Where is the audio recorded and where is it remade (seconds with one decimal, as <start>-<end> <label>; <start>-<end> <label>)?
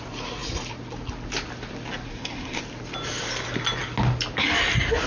0.0-2.1 recorded; 2.1-2.6 remade; 2.6-5.1 recorded